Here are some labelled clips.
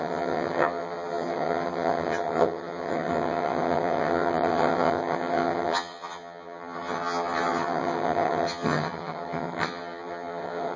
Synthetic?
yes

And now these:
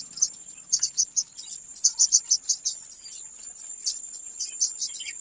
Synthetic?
no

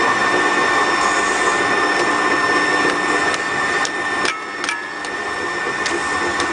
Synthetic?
no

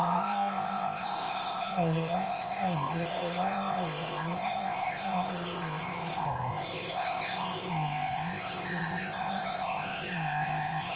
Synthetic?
yes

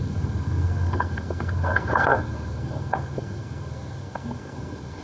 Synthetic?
yes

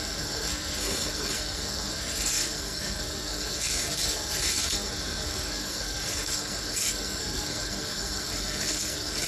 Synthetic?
yes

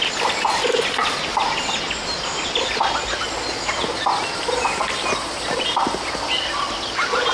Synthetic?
no